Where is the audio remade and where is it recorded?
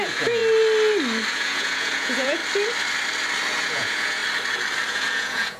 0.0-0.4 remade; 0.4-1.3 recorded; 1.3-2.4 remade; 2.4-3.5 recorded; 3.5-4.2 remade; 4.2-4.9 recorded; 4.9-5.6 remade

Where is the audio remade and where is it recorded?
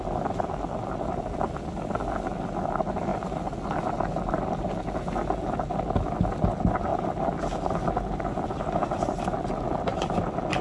0.0-10.6 recorded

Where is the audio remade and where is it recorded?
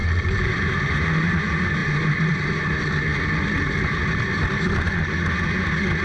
0.0-1.3 remade; 1.3-6.0 recorded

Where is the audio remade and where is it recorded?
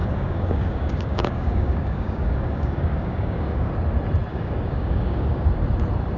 0.0-3.7 remade; 3.7-4.3 recorded; 4.3-5.5 remade; 5.5-6.2 recorded